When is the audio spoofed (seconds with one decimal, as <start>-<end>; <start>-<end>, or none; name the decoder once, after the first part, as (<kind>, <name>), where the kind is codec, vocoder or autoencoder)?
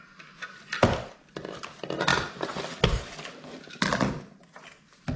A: none